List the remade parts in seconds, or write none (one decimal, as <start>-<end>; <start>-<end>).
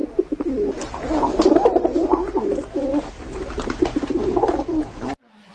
0.0-2.9; 4.2-5.5